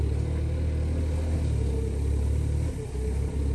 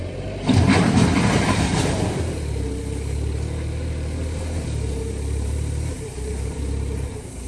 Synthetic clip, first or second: second